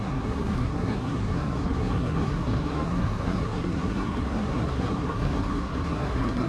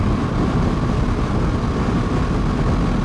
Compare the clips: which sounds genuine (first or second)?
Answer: second